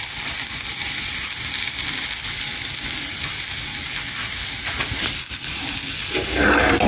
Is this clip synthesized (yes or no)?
no